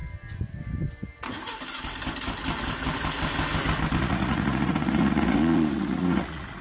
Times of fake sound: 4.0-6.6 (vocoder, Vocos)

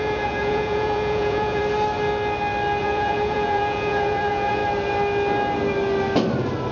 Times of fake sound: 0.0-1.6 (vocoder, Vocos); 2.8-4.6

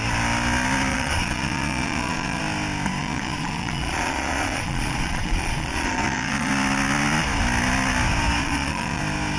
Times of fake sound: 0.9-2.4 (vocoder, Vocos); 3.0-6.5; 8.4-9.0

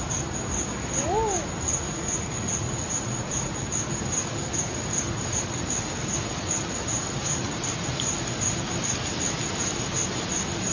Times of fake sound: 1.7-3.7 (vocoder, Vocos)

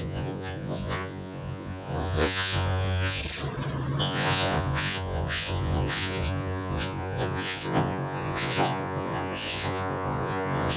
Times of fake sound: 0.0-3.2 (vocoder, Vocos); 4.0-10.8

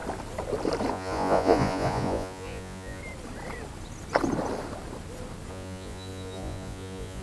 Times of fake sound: 0.9-3.0 (vocoder, Vocos); 5.5-7.2